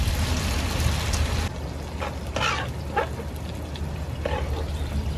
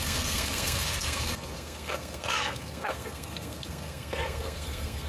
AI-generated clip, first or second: second